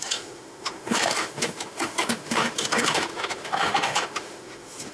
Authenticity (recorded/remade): remade